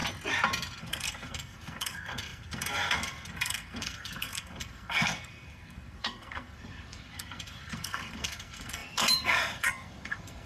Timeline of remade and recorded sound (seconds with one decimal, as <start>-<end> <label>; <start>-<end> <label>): 0.0-0.8 recorded; 0.8-10.5 remade